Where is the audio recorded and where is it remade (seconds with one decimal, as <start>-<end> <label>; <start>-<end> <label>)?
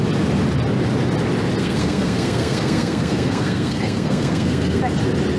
0.0-1.6 recorded; 1.6-4.8 remade; 4.8-5.4 recorded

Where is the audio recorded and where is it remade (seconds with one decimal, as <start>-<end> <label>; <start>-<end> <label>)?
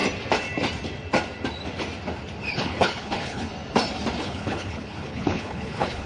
0.0-2.5 recorded; 2.5-3.5 remade; 3.5-4.2 recorded; 4.2-6.1 remade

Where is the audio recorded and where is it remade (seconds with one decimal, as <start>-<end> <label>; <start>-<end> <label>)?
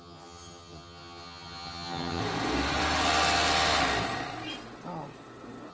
0.0-2.2 remade; 2.2-5.7 recorded